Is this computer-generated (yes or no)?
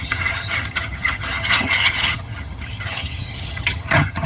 yes